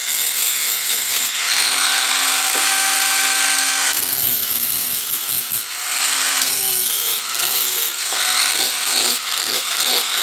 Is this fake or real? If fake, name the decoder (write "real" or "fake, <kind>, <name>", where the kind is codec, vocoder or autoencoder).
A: fake, codec, SNAC